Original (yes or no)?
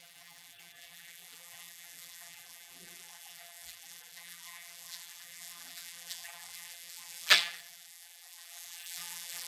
no